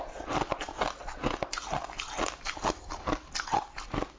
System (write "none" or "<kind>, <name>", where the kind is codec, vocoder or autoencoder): none